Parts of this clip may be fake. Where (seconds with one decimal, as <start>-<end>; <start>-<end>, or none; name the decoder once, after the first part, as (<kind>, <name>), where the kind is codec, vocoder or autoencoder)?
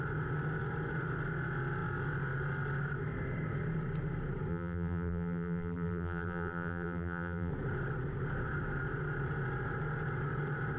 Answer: 4.5-7.5 (vocoder, BigVGAN v2)